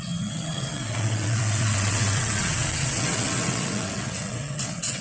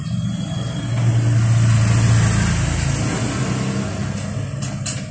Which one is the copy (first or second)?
first